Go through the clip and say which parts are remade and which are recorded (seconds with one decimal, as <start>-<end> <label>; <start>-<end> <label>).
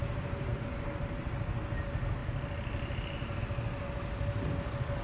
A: 0.0-5.0 recorded